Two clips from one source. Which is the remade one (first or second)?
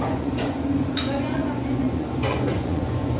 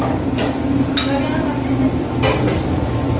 first